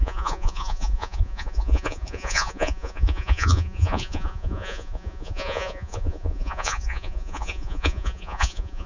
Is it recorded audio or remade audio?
remade